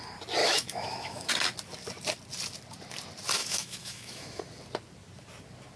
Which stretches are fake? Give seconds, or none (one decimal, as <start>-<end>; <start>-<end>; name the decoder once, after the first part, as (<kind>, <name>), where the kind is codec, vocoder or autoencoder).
0.4-1.3 (autoencoder, DAC-VAE); 3.4-4.4